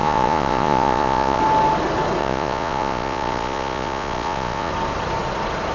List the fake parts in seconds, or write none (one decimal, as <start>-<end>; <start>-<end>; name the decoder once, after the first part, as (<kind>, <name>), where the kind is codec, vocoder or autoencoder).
0.0-1.4 (vocoder, Vocos); 2.2-4.7